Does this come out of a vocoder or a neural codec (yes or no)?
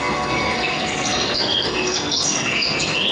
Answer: yes